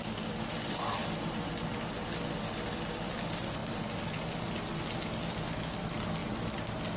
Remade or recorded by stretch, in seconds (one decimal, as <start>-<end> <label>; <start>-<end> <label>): 0.0-7.0 recorded